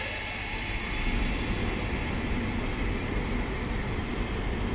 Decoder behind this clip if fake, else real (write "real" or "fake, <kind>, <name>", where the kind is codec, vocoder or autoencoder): real